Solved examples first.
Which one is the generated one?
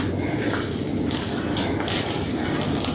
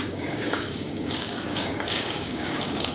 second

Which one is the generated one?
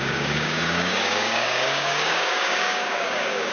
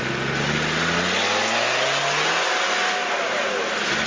first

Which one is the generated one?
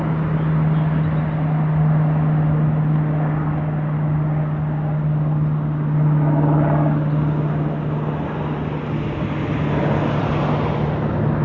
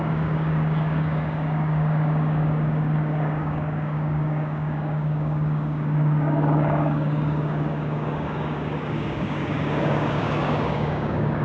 second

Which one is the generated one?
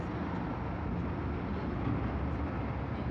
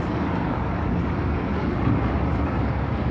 second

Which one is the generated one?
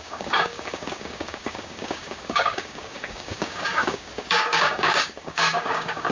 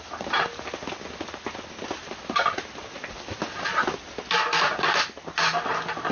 first